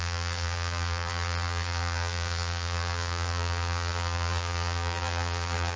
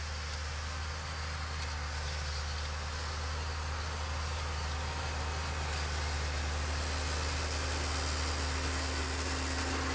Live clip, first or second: second